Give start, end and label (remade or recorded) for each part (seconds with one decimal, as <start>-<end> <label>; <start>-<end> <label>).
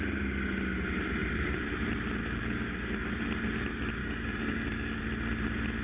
0.0-2.2 recorded; 2.2-3.1 remade; 3.1-4.0 recorded; 4.0-5.0 remade; 5.0-5.8 recorded